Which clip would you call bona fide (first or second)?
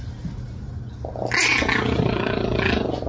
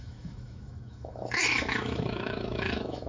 first